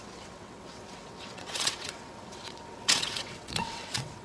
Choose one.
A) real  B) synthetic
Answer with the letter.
B